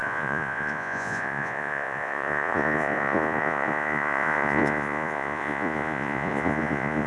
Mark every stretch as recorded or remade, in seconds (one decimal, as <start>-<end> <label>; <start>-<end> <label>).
0.0-7.1 remade